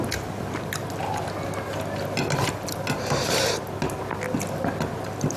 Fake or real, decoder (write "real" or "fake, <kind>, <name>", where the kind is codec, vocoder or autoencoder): real